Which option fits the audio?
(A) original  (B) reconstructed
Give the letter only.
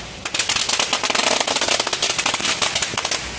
A